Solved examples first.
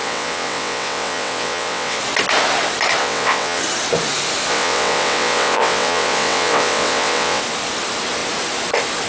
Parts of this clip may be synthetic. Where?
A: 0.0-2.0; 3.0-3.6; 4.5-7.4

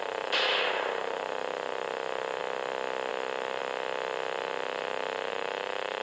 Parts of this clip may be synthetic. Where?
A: 0.0-2.4; 3.1-3.6; 5.3-6.0